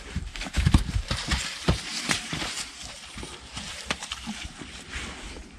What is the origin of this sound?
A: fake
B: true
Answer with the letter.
A